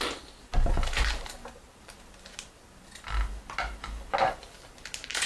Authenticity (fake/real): real